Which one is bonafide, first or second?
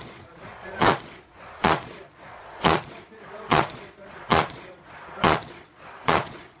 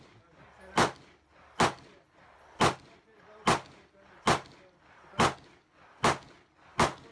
second